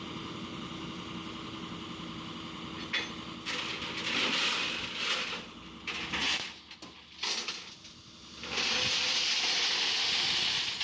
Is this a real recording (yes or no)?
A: yes